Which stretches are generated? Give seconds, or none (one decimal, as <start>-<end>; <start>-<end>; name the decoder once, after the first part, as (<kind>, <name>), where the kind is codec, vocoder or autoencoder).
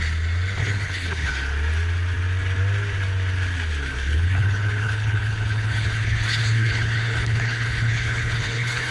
0.6-1.3 (codec, HILCodec); 3.9-8.9